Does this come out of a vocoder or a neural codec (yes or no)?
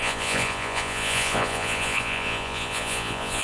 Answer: yes